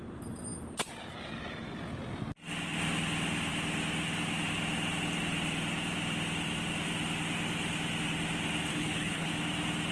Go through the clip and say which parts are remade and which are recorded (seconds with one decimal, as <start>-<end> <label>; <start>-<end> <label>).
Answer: 0.0-8.7 recorded; 8.7-9.3 remade; 9.3-9.9 recorded